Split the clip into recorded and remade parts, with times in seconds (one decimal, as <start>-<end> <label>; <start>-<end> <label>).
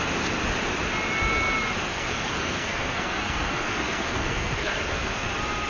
0.0-1.9 recorded; 1.9-5.3 remade; 5.3-5.7 recorded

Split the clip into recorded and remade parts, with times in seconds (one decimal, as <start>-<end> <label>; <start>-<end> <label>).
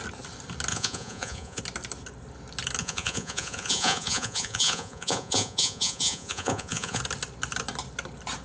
0.0-0.7 recorded; 0.7-1.6 remade; 1.6-2.8 recorded; 2.8-7.0 remade; 7.0-8.4 recorded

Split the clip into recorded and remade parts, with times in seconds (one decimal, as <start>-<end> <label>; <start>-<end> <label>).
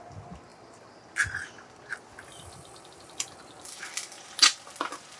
0.0-0.5 recorded; 0.5-3.4 remade; 3.4-5.2 recorded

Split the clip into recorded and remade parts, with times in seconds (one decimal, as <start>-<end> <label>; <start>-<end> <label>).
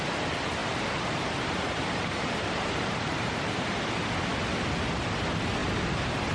0.0-0.6 recorded; 0.6-3.9 remade; 3.9-5.6 recorded; 5.6-6.3 remade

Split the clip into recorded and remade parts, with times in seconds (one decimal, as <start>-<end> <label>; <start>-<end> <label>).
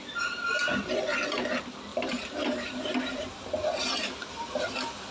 0.0-1.9 recorded; 1.9-5.1 remade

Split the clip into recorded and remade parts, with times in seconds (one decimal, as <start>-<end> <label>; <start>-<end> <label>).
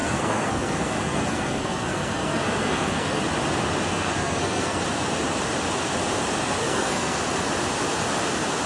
0.0-3.2 remade; 3.2-3.9 recorded; 3.9-4.8 remade; 4.8-6.6 recorded; 6.6-7.2 remade; 7.2-8.7 recorded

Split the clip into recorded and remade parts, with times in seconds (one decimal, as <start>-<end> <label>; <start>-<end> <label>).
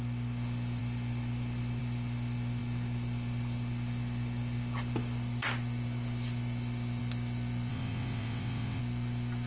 0.0-7.7 recorded; 7.7-8.8 remade; 8.8-9.5 recorded